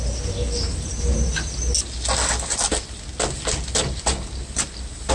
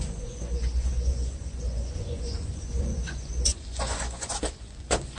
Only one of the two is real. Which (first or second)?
first